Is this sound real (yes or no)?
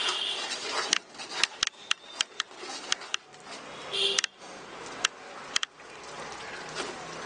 yes